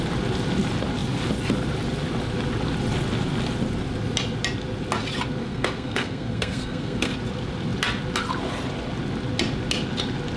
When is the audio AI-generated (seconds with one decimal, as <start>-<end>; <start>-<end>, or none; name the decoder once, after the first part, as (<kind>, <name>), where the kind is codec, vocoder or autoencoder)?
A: 5.4-7.1 (codec, SNAC)